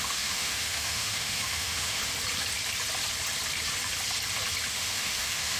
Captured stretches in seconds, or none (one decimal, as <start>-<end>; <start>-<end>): 2.0-4.7